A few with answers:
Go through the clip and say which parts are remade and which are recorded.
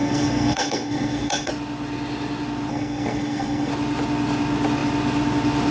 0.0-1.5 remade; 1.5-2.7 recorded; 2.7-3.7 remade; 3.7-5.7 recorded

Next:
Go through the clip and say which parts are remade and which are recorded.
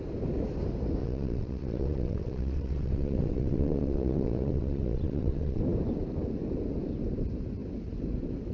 0.0-1.0 recorded; 1.0-5.6 remade; 5.6-8.5 recorded